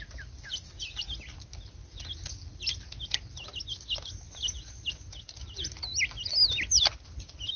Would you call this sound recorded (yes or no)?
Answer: yes